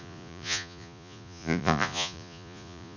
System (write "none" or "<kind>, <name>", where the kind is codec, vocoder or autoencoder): vocoder, Vocos